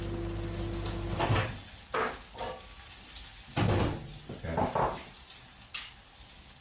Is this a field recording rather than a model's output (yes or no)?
yes